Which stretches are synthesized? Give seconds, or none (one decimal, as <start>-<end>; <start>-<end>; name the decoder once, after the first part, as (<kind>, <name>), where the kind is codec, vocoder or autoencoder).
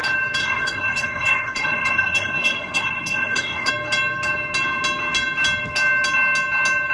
0.4-3.7 (codec, SNAC)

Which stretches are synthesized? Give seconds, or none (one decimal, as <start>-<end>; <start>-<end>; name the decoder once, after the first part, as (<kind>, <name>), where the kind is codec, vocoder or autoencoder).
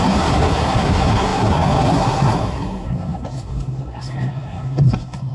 0.0-5.3 (codec, SNAC)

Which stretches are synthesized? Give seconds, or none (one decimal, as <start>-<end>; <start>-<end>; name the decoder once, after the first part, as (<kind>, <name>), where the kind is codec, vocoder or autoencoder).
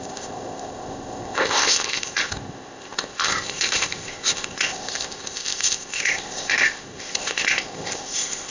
0.0-8.5 (codec, ZipCodec)